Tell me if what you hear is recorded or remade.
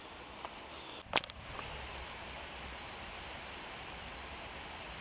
recorded